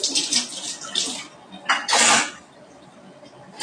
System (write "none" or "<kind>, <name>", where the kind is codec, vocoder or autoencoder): none